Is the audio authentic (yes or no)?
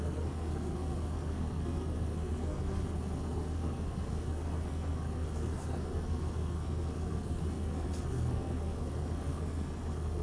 no